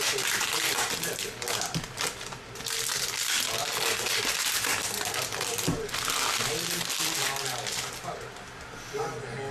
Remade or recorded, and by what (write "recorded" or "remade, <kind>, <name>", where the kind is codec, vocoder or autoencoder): recorded